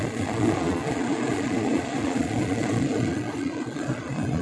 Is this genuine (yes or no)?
no